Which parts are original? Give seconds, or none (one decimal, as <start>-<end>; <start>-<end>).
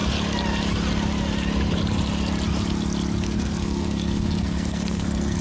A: 0.0-3.2